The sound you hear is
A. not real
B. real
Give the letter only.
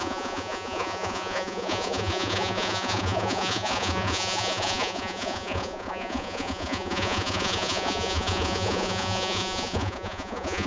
A